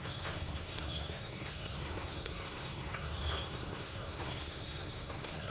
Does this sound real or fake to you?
fake